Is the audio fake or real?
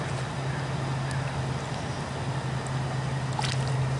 real